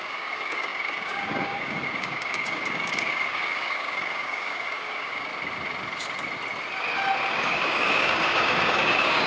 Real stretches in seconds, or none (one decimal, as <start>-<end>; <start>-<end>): 5.3-7.3